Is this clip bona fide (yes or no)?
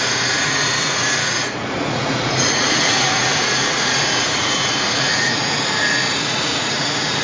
no